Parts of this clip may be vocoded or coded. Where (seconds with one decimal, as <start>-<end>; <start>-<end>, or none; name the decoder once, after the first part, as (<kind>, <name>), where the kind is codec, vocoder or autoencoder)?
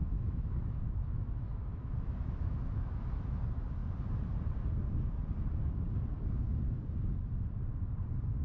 0.0-3.4 (autoencoder, DAC-VAE)